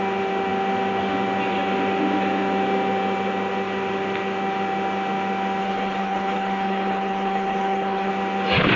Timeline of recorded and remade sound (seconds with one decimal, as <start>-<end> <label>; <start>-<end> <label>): 0.0-5.6 recorded; 5.6-8.1 remade; 8.1-8.8 recorded